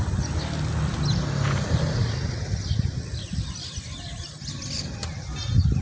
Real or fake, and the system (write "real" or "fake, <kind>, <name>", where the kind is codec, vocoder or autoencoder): real